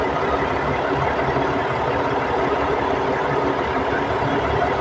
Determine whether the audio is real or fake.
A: real